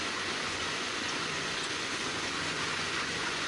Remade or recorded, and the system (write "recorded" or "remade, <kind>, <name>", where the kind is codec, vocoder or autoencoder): remade, vocoder, Vocos